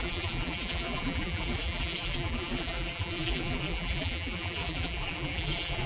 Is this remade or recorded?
remade